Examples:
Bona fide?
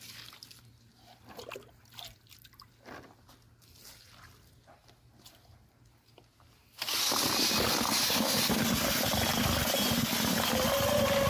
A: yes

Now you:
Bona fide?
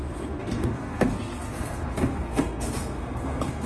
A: no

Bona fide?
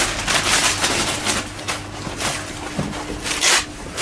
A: yes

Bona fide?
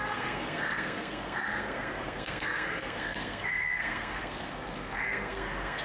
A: no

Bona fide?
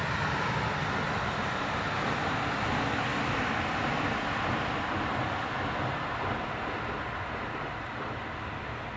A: yes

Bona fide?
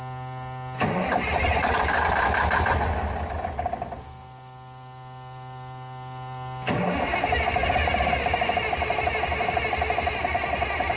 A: yes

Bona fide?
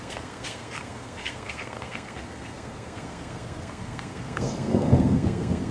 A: no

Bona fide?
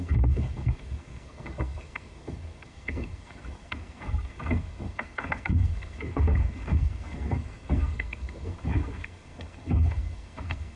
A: no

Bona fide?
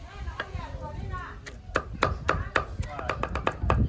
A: yes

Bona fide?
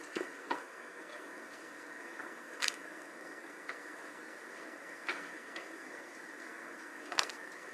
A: no